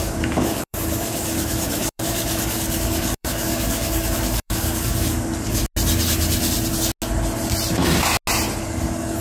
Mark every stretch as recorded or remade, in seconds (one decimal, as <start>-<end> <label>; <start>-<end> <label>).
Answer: 0.0-5.6 remade; 5.6-8.6 recorded; 8.6-9.2 remade